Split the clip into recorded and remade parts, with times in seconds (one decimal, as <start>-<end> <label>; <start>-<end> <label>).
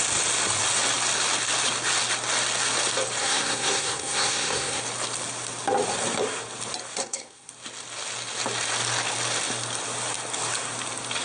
0.0-3.2 recorded; 3.2-4.8 remade; 4.8-7.0 recorded; 7.0-7.5 remade; 7.5-11.2 recorded